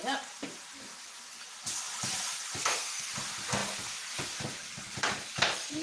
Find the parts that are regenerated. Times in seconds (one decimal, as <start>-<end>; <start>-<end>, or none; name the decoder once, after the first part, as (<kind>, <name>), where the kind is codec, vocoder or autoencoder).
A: 2.6-3.1 (codec, SNAC)